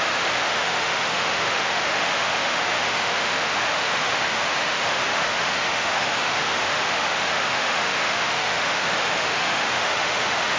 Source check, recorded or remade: remade